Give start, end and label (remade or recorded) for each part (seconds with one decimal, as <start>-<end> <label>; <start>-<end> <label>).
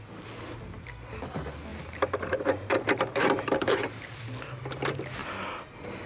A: 0.0-1.7 recorded; 1.7-4.3 remade; 4.3-6.1 recorded